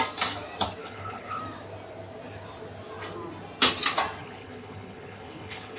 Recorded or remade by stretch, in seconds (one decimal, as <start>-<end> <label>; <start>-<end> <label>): 0.0-0.8 recorded; 0.8-1.4 remade; 1.4-4.2 recorded; 4.2-5.8 remade